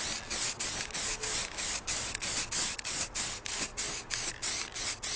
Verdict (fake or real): real